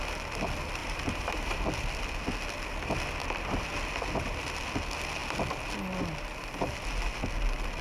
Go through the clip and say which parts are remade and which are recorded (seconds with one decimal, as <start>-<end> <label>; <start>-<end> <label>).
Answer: 0.0-0.8 recorded; 0.8-1.6 remade; 1.6-7.8 recorded